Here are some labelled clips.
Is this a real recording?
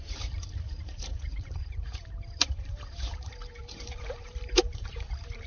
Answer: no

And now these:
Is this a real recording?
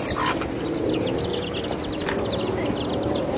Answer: yes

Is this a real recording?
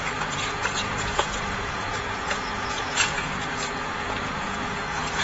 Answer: no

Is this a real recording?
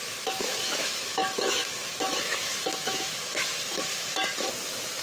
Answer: no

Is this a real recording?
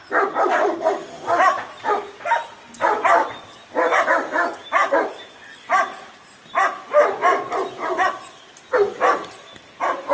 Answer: no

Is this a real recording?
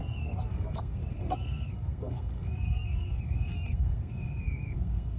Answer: no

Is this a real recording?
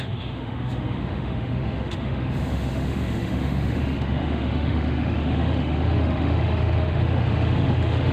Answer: no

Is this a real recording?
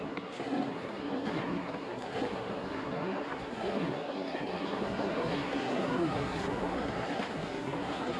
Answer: no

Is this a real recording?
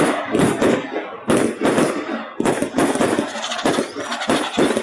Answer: yes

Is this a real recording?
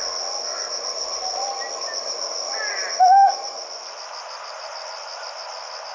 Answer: yes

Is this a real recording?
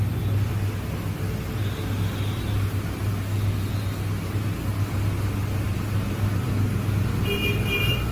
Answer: yes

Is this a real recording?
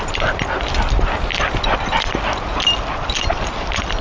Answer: yes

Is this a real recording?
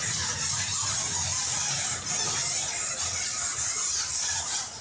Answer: yes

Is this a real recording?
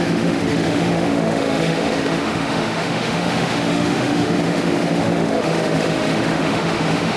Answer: no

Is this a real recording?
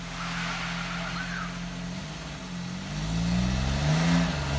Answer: yes